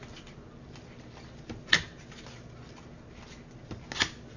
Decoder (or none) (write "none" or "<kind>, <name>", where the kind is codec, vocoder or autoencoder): none